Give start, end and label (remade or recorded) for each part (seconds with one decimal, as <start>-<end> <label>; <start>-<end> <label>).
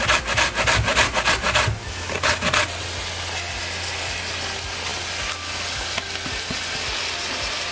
0.0-7.7 recorded